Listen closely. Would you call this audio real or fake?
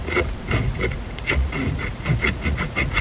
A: fake